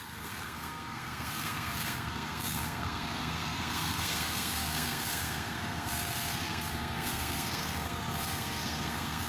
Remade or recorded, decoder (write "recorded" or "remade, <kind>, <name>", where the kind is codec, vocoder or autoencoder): remade, codec, SNAC